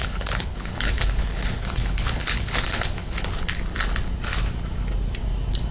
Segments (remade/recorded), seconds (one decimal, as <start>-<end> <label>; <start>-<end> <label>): 0.0-3.4 remade; 3.4-5.7 recorded